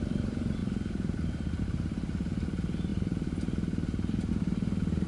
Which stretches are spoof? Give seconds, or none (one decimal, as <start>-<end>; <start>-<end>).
none